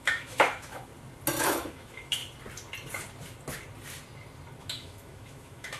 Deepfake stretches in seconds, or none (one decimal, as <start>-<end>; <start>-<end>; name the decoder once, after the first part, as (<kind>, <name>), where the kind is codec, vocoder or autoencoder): 0.0-0.9 (autoencoder, DAC-VAE); 1.4-2.2; 4.6-5.8